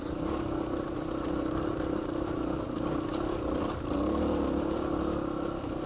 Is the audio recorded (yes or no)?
yes